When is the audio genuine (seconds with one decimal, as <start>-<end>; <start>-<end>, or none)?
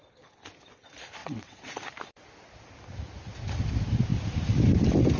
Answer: 0.0-1.2; 1.7-5.2